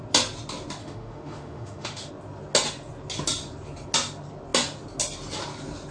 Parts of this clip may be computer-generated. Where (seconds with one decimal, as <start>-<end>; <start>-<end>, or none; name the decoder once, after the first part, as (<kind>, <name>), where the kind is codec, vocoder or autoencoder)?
0.8-2.1 (autoencoder, DAC-VAE)